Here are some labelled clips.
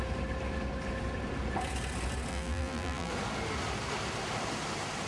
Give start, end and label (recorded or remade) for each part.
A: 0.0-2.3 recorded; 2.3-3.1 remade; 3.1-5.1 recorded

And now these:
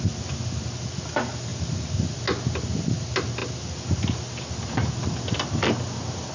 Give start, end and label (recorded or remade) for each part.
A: 0.0-1.5 recorded; 1.5-2.1 remade; 2.1-6.3 recorded

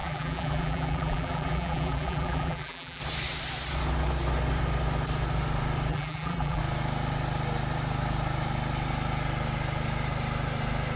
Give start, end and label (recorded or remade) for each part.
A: 0.0-3.0 remade; 3.0-5.9 recorded; 5.9-6.6 remade; 6.6-11.0 recorded

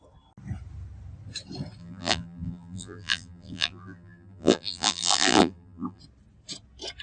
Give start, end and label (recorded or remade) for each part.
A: 0.0-1.8 recorded; 1.8-6.0 remade; 6.0-7.0 recorded

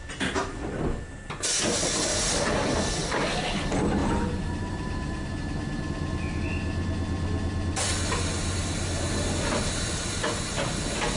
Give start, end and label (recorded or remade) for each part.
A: 0.0-4.0 recorded; 4.0-6.4 remade; 6.4-11.2 recorded

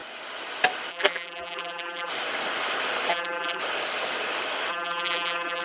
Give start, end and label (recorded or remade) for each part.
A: 0.0-0.9 recorded; 0.9-2.1 remade; 2.1-3.1 recorded; 3.1-3.6 remade; 3.6-4.7 recorded; 4.7-5.6 remade

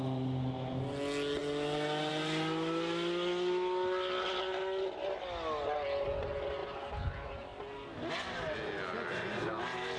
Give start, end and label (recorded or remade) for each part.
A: 0.0-10.0 recorded